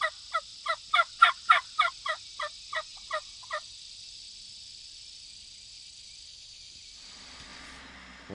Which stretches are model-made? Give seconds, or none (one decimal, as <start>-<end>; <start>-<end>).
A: 0.5-1.9; 2.9-6.7; 7.5-8.3